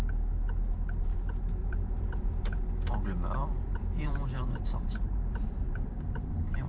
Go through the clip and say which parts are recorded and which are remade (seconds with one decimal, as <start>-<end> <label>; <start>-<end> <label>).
0.0-1.6 recorded; 1.6-2.6 remade; 2.6-3.4 recorded; 3.4-6.3 remade; 6.3-6.7 recorded